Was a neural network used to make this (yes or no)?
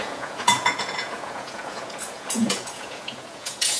yes